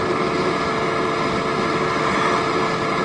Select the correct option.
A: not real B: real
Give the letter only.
B